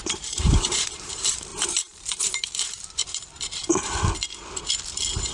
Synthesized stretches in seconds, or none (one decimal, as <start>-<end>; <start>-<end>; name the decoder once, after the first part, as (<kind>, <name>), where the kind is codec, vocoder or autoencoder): 0.0-3.0 (vocoder, BigVGAN v2)